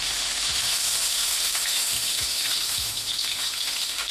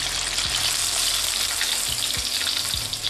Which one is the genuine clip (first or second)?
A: second